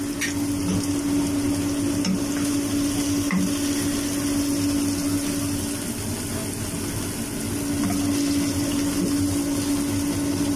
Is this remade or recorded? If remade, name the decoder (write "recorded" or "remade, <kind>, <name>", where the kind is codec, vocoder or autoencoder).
recorded